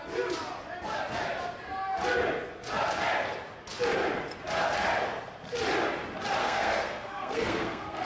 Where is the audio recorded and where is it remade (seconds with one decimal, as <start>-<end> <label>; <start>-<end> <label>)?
0.0-6.4 recorded; 6.4-8.1 remade